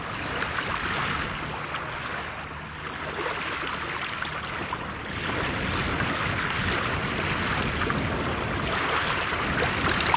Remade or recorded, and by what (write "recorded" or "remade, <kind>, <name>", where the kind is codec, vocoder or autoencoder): recorded